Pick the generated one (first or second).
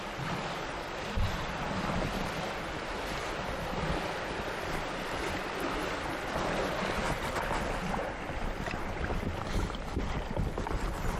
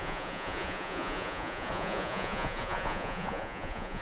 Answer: second